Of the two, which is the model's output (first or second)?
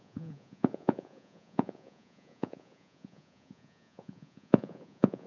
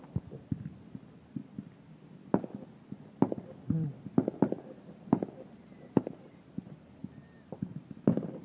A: first